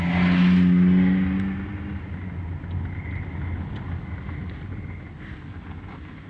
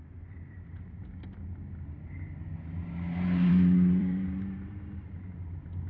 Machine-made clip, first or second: second